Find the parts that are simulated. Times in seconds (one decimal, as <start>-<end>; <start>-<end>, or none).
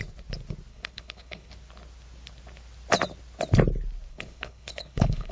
0.7-1.5; 4.1-5.3